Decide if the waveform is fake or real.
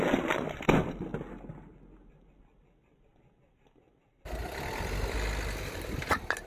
real